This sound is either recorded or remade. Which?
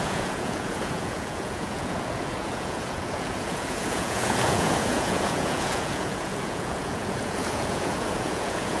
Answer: remade